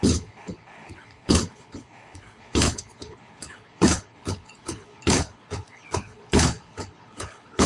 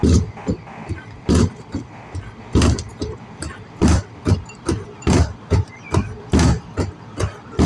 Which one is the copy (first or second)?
first